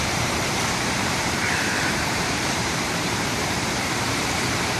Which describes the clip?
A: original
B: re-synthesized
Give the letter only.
B